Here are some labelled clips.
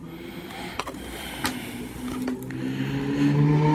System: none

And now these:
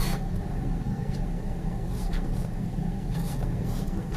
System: codec, SNAC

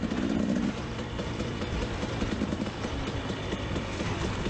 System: vocoder, BigVGAN v2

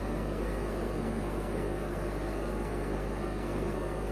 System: codec, SNAC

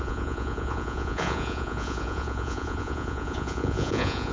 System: vocoder, Vocos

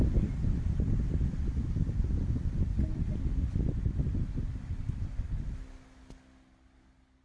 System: none